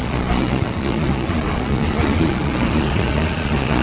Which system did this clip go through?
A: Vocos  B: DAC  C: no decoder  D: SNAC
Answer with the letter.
A